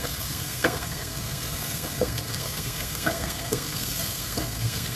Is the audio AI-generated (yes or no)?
yes